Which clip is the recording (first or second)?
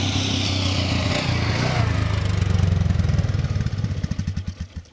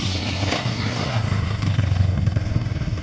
first